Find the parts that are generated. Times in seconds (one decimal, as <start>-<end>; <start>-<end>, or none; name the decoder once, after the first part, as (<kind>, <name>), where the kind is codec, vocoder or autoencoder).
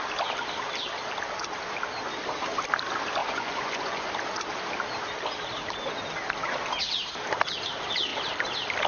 3.2-4.1 (vocoder, Vocos)